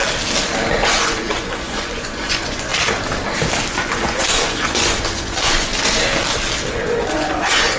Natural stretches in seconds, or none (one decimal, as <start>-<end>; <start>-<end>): 0.0-0.7; 2.7-3.7; 5.7-6.7